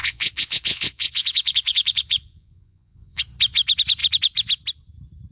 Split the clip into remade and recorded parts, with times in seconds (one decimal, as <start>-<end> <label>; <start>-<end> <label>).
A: 0.0-3.2 remade; 3.2-5.3 recorded